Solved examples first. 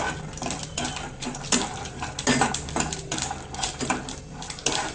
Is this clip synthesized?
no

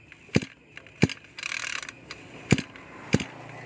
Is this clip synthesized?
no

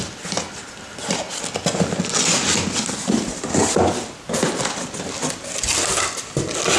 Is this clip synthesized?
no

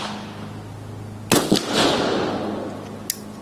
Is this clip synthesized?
no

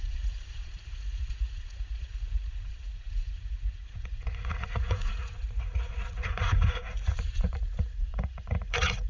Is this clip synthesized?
yes